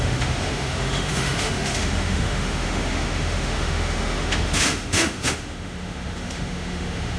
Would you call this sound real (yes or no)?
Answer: no